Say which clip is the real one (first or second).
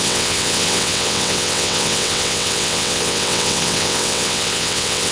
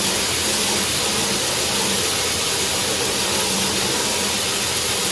second